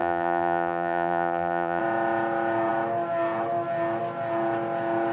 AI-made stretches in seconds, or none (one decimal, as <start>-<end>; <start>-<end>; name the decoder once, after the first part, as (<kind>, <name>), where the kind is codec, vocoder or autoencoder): 0.0-1.8 (vocoder, BigVGAN v2)